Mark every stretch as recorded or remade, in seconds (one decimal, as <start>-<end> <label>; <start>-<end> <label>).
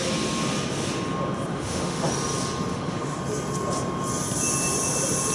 0.0-1.5 recorded; 1.5-2.1 remade; 2.1-2.7 recorded; 2.7-3.2 remade; 3.2-5.3 recorded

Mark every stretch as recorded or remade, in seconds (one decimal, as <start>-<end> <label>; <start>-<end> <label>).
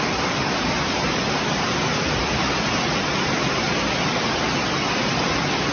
0.0-5.7 recorded